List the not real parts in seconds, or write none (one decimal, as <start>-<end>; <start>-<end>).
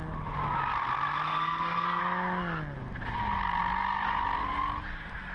1.3-2.0